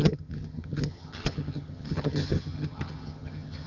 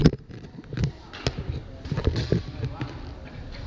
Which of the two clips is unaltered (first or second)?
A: second